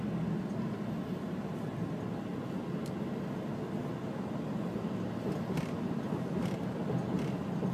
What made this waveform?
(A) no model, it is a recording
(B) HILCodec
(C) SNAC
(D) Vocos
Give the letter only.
A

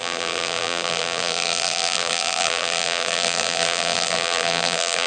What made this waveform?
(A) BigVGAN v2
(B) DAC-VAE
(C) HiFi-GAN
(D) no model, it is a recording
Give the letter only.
A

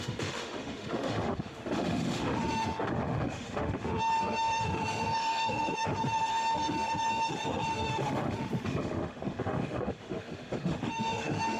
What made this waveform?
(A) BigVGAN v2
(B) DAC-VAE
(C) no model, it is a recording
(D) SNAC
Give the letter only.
B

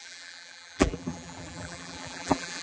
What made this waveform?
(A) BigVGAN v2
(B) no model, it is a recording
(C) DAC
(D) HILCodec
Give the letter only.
A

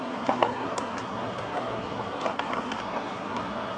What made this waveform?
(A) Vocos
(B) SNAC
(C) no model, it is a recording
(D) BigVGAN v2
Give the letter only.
B